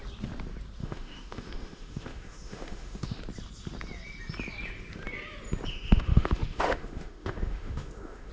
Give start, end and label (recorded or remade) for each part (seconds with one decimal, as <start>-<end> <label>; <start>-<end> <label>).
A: 0.0-0.8 recorded; 0.8-3.2 remade; 3.2-5.7 recorded; 5.7-8.3 remade